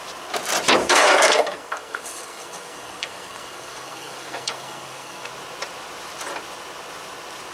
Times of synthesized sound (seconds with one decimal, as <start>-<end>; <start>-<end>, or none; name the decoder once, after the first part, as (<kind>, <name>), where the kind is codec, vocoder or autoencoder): 0.8-5.3 (codec, SNAC)